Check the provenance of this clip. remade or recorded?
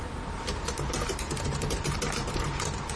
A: remade